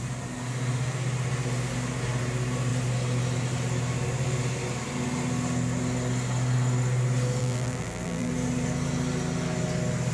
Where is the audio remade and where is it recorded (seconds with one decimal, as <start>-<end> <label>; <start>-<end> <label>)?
0.0-7.4 recorded; 7.4-8.3 remade; 8.3-10.1 recorded